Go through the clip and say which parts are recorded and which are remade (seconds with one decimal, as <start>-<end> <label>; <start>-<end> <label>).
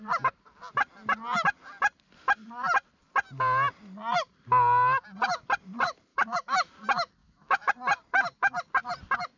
0.0-6.1 recorded; 6.1-6.7 remade; 6.7-7.2 recorded; 7.2-7.7 remade; 7.7-9.4 recorded